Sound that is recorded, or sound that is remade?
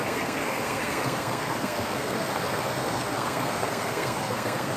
remade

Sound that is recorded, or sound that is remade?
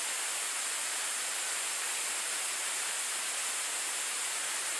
recorded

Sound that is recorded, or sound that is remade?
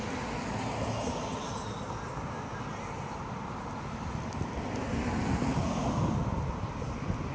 recorded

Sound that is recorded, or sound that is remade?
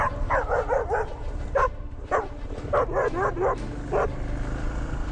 recorded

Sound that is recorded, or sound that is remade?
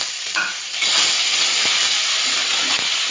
recorded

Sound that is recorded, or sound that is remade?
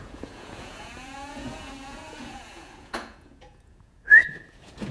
remade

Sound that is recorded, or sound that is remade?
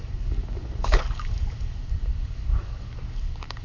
remade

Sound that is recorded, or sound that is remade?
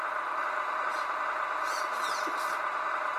recorded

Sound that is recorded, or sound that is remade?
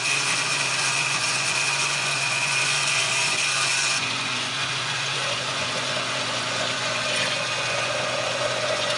remade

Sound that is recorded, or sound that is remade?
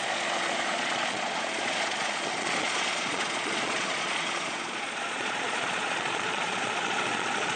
remade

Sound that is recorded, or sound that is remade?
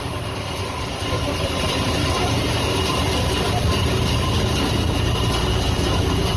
recorded